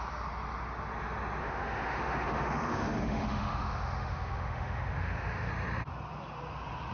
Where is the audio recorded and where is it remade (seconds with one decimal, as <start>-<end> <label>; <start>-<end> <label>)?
0.0-1.4 recorded; 1.4-5.5 remade; 5.5-6.9 recorded